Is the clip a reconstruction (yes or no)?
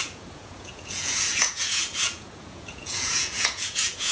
yes